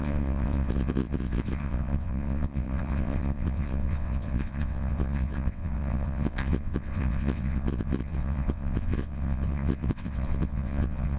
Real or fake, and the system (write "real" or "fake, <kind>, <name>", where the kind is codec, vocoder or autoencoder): fake, vocoder, WaveNeXt